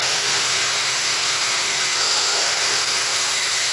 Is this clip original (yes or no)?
no